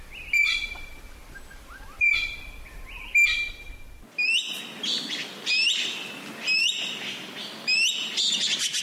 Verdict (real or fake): real